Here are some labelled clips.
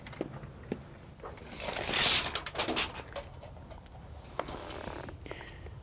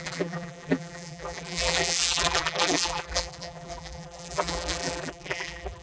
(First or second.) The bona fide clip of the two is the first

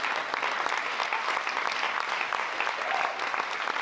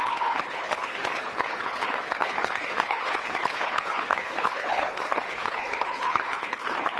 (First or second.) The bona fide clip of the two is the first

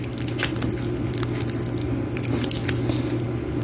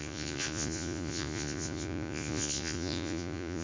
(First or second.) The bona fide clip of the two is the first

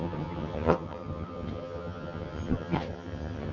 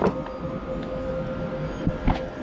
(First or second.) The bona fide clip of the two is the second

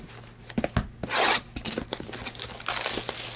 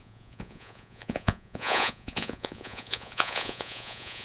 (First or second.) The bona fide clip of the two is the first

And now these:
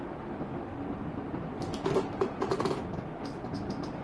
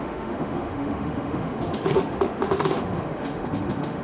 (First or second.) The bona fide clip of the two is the first